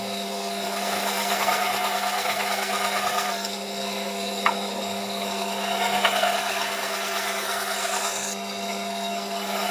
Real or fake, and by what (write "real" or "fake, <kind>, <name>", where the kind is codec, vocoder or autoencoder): fake, codec, SNAC